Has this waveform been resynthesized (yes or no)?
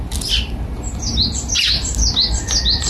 no